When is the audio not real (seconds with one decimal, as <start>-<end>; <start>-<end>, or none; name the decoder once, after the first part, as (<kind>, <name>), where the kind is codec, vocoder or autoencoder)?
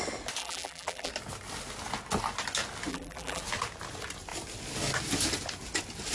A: 0.4-1.1 (vocoder, BigVGAN v2); 2.9-3.4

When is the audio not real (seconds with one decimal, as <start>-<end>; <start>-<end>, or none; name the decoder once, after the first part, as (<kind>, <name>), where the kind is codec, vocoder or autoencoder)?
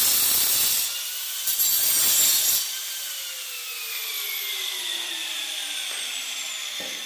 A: 5.2-6.4 (vocoder, BigVGAN v2)